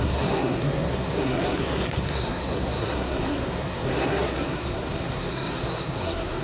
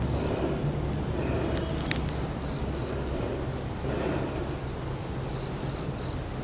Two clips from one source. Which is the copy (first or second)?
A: first